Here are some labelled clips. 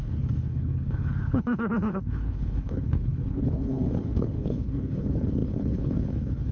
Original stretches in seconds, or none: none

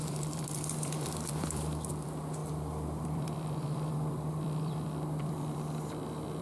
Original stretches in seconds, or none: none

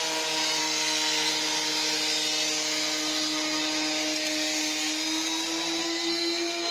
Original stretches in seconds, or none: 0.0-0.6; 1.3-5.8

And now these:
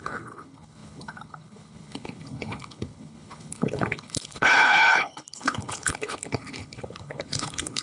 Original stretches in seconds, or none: none